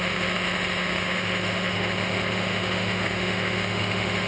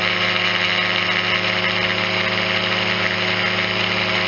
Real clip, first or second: second